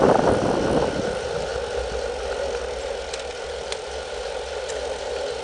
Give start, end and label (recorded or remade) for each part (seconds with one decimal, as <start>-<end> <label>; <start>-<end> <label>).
0.0-5.4 recorded